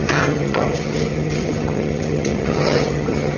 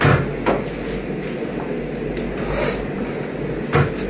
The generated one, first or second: first